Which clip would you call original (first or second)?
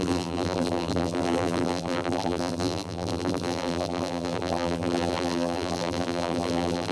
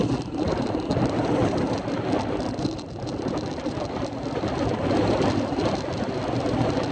second